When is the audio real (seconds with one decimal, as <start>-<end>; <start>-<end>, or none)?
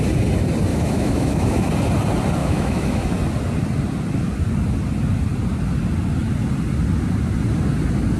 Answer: 0.0-0.7; 1.7-2.4; 3.1-8.2